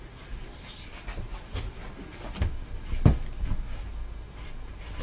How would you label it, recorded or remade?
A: recorded